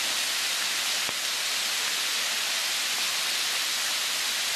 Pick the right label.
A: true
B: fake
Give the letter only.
A